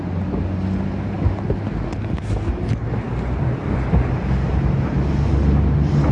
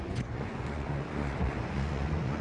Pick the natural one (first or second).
first